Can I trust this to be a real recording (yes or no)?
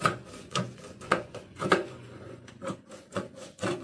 no